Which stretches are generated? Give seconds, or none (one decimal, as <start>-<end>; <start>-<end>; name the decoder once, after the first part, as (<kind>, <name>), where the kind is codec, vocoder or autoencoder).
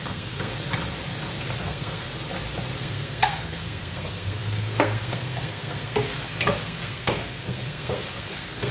0.0-0.5 (codec, SNAC); 1.6-2.1; 2.8-8.7